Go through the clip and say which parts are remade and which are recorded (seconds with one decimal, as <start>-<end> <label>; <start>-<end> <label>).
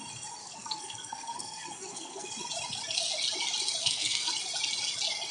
0.0-0.4 recorded; 0.4-2.3 remade; 2.3-3.8 recorded; 3.8-4.3 remade; 4.3-5.3 recorded